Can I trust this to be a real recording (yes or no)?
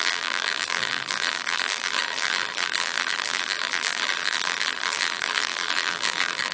no